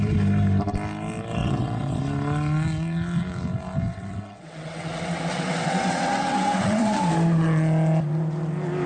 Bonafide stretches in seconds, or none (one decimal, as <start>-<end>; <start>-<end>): 0.0-1.4; 2.0-3.9; 7.1-8.9